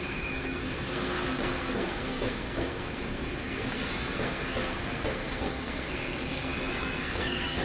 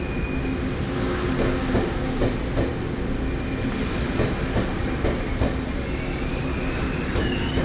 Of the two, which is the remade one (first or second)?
first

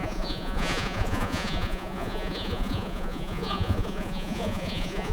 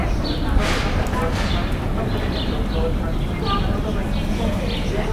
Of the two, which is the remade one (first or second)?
first